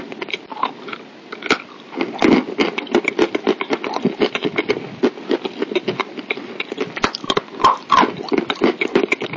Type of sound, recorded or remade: recorded